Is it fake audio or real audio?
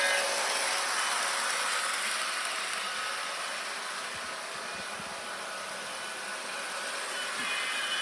real